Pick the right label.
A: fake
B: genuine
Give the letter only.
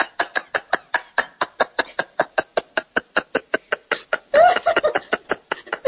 B